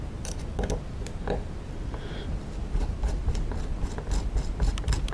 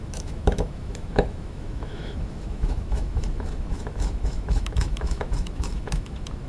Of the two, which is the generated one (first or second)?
second